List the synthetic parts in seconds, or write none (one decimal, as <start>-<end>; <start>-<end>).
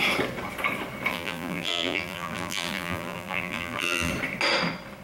1.1-4.1